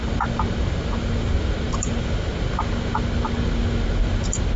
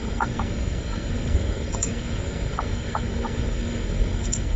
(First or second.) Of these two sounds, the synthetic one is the second